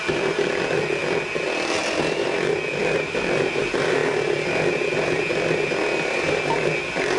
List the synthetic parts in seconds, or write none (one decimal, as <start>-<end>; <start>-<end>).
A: 2.8-3.6